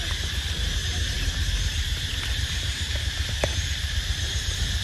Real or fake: fake